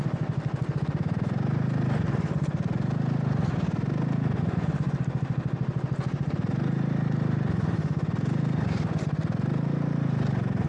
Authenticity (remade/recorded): recorded